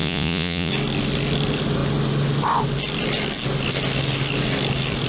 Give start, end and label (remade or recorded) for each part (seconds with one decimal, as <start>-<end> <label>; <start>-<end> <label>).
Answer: 0.0-0.7 remade; 0.7-5.1 recorded